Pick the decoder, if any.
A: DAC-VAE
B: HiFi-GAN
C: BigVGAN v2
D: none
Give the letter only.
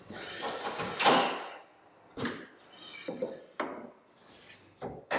D